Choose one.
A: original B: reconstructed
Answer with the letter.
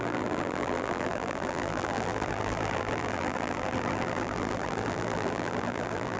B